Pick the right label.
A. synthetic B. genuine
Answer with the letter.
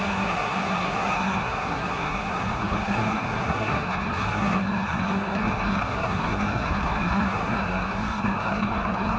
A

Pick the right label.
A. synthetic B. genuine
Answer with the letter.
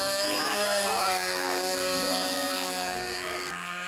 A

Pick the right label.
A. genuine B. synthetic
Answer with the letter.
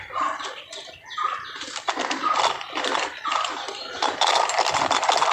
A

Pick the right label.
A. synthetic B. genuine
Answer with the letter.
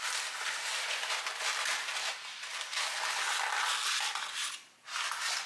B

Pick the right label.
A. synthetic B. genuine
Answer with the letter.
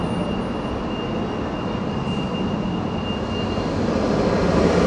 B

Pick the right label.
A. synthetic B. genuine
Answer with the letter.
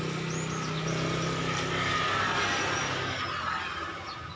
B